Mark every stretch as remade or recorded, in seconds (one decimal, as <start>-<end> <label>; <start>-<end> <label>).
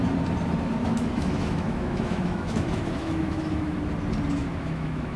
0.0-0.8 recorded; 0.8-3.8 remade; 3.8-4.4 recorded; 4.4-5.2 remade